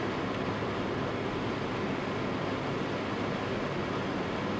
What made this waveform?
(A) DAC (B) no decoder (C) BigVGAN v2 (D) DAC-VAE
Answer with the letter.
B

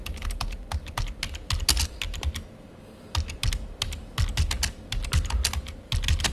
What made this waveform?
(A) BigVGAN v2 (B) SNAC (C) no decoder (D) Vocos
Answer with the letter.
C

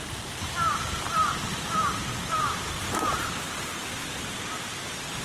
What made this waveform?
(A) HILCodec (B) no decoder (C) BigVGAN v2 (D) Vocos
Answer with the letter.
C